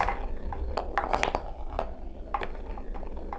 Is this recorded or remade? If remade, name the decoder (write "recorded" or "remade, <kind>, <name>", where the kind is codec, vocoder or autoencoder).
recorded